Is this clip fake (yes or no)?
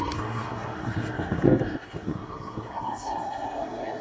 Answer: yes